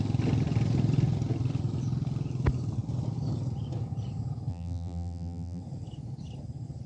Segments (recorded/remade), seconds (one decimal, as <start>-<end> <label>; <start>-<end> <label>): 0.0-4.5 recorded; 4.5-5.6 remade; 5.6-6.9 recorded

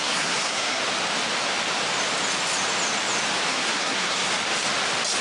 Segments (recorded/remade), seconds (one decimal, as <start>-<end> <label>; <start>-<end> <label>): 0.0-0.8 remade; 0.8-3.5 recorded; 3.5-4.3 remade; 4.3-5.2 recorded

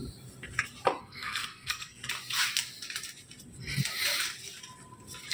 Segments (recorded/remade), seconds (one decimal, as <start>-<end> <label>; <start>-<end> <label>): 0.0-1.0 recorded; 1.0-2.0 remade; 2.0-5.3 recorded

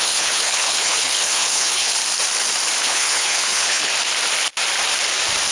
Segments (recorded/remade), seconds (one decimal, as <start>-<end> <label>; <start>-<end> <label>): 0.0-2.0 remade; 2.0-2.8 recorded; 2.8-3.9 remade; 3.9-5.5 recorded

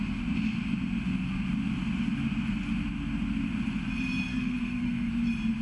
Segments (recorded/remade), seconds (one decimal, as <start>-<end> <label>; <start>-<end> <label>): 0.0-4.3 recorded; 4.3-5.1 remade; 5.1-5.6 recorded

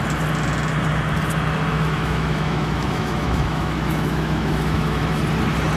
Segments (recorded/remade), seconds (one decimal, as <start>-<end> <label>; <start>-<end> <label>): 0.0-1.7 recorded; 1.7-5.2 remade; 5.2-5.8 recorded

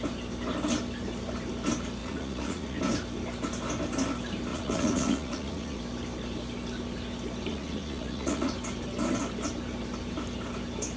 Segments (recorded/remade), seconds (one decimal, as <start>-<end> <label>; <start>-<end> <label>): 0.0-2.0 recorded; 2.0-2.8 remade; 2.8-4.5 recorded; 4.5-5.8 remade; 5.8-7.5 recorded; 7.5-8.5 remade; 8.5-11.0 recorded